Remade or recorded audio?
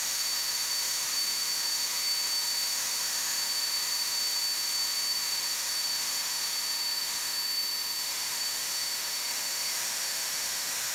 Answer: remade